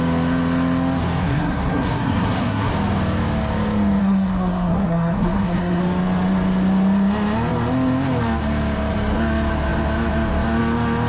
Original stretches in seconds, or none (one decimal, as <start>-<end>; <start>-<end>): 0.0-1.2; 2.7-4.0; 5.8-11.1